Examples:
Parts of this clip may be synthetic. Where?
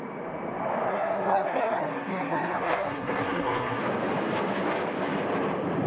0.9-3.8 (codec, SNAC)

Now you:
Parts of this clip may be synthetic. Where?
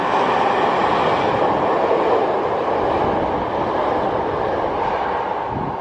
none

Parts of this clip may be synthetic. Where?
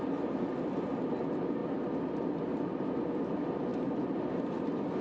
none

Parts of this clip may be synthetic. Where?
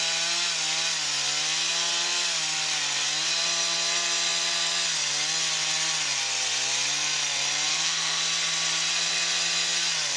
7.7-8.2 (codec, SNAC)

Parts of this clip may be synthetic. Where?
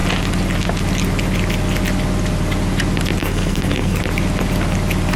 3.2-4.0 (codec, SNAC)